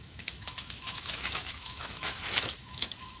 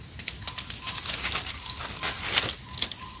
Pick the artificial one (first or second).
first